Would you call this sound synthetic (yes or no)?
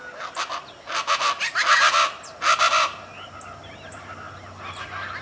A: no